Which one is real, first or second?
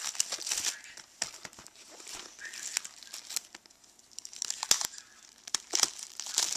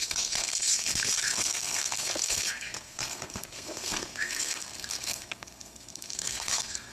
first